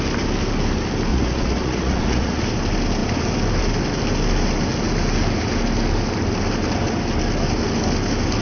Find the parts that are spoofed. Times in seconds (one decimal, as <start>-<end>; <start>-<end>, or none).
1.1-2.4